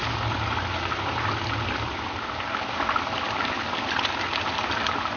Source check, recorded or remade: recorded